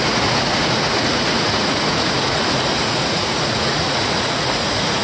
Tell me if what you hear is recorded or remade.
remade